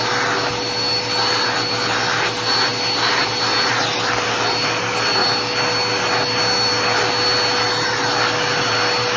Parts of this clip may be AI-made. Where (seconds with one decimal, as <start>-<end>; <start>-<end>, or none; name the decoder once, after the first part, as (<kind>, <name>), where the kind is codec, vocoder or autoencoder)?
none